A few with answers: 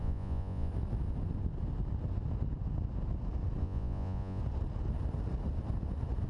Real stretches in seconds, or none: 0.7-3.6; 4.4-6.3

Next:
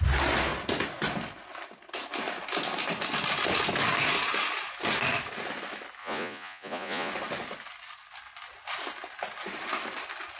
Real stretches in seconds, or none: 0.0-6.0; 7.1-10.4

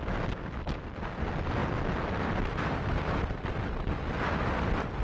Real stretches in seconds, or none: 0.0-5.0

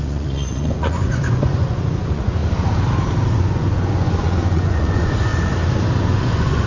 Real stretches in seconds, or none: 2.4-3.3; 5.3-6.0